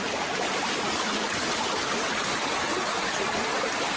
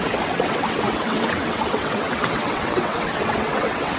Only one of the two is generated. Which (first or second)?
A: second